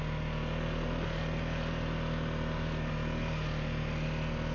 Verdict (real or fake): real